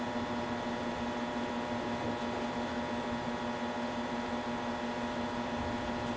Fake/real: real